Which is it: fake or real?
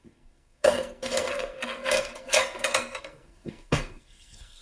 fake